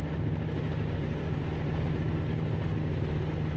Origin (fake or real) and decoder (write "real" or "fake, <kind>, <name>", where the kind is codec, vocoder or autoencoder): real